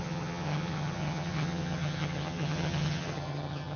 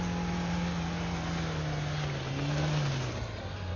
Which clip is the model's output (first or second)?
first